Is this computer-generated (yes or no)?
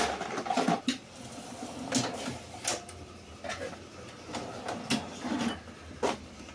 no